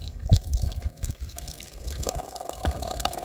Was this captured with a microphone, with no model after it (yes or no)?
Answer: no